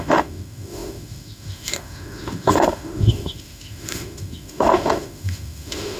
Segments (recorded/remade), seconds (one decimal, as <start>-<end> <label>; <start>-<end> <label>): 0.0-6.0 remade